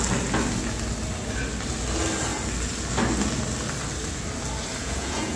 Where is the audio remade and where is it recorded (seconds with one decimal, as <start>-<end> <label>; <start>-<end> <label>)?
0.0-4.8 recorded; 4.8-5.4 remade